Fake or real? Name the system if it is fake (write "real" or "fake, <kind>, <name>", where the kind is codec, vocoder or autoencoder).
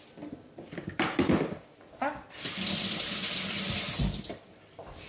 fake, vocoder, BigVGAN v2